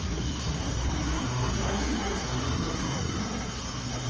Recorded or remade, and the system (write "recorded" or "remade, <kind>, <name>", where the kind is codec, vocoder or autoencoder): remade, codec, SNAC